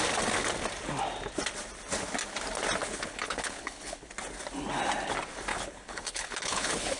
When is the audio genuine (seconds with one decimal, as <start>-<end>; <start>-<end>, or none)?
0.0-2.8; 4.1-5.5